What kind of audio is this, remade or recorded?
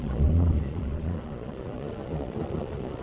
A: remade